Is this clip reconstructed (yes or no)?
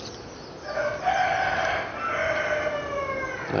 no